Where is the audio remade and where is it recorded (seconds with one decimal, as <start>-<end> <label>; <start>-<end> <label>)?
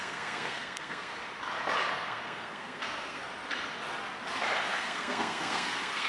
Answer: 0.0-1.1 remade; 1.1-1.9 recorded; 1.9-3.3 remade; 3.3-4.7 recorded; 4.7-6.1 remade